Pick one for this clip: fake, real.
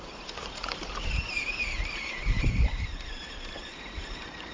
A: fake